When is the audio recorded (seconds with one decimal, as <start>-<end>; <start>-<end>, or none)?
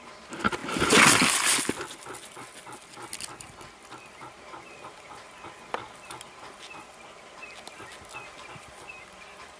0.0-9.6